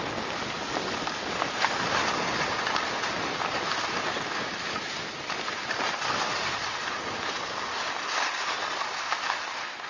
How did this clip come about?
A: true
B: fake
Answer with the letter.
A